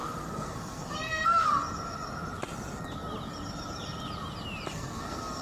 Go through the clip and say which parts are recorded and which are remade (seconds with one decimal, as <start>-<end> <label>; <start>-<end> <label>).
0.0-1.5 remade; 1.5-4.7 recorded; 4.7-5.4 remade